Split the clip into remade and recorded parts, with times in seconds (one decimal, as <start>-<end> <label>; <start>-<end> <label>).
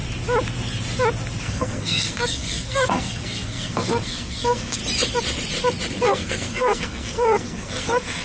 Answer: 0.0-1.4 recorded; 1.4-4.8 remade; 4.8-5.9 recorded; 5.9-8.2 remade